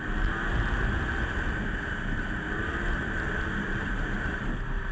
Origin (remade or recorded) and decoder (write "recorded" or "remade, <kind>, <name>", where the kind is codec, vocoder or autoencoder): recorded